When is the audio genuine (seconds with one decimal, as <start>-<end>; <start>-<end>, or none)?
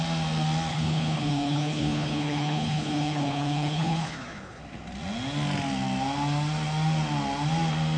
0.0-0.7; 4.6-8.0